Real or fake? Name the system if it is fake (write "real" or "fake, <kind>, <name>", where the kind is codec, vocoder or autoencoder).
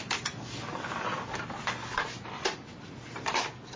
real